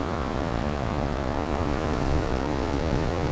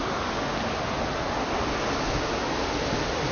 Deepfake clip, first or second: first